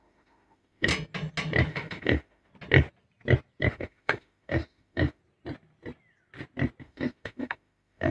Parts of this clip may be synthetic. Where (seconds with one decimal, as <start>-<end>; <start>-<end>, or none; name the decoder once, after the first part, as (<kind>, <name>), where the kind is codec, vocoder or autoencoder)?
0.0-0.9 (autoencoder, DAC-VAE); 1.7-2.5; 3.6-5.2; 6.8-8.1